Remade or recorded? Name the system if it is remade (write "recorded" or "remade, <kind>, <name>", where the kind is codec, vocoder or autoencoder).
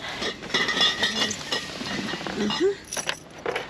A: recorded